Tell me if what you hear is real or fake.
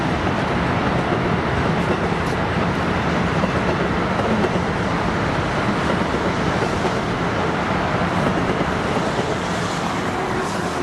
real